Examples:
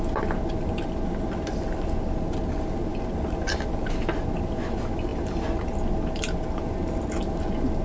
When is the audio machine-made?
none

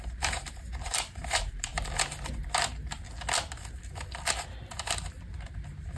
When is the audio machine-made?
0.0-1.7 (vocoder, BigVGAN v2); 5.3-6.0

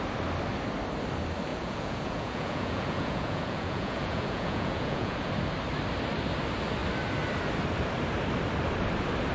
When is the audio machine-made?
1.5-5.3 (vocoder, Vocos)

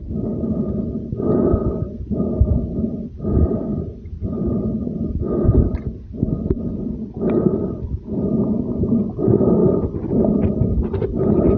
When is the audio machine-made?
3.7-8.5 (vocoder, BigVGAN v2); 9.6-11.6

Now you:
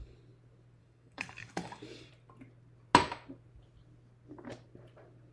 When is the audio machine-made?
0.8-2.1 (codec, DAC)

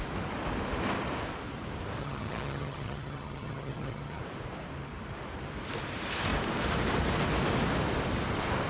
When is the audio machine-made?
2.0-4.2 (vocoder, HiFi-GAN)